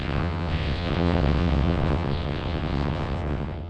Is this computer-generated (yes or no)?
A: yes